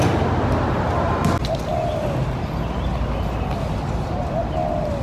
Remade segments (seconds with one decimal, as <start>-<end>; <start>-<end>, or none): none